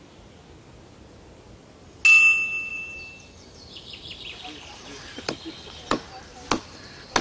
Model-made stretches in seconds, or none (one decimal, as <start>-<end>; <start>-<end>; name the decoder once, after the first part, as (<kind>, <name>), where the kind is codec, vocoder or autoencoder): 2.7-6.1 (vocoder, BigVGAN v2)